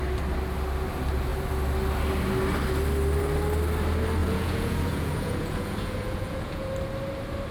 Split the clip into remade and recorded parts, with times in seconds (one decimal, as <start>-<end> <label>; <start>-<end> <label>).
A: 0.0-4.2 recorded; 4.2-6.7 remade; 6.7-7.5 recorded